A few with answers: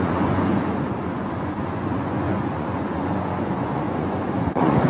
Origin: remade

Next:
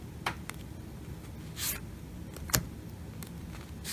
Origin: recorded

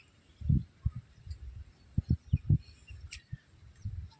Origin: recorded